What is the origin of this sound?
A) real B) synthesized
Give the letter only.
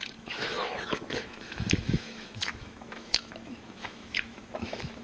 B